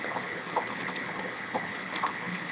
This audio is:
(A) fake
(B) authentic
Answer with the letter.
A